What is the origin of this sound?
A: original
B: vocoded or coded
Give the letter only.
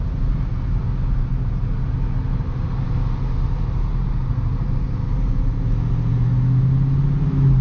A